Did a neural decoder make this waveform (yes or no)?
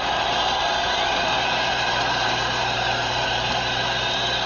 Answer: yes